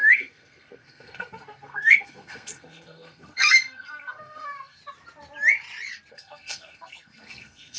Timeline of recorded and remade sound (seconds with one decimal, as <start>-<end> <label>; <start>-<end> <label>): 0.0-4.8 remade; 4.8-6.1 recorded; 6.1-7.8 remade